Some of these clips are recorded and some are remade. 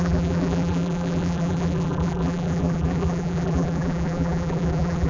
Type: remade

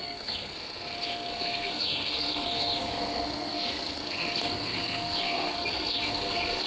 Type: remade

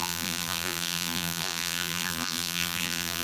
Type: remade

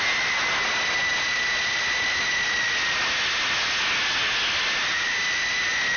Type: recorded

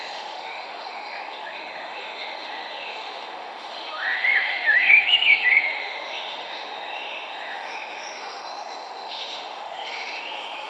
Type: remade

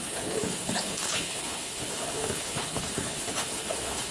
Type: remade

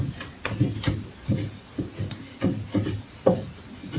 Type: recorded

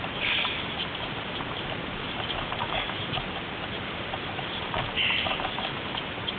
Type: remade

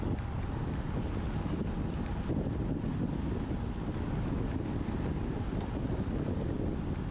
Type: recorded